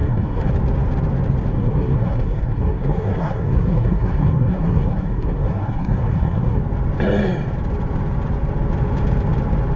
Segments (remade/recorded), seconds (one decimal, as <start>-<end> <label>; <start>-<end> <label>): 0.0-0.5 remade; 0.5-1.5 recorded; 1.5-6.6 remade; 6.6-9.8 recorded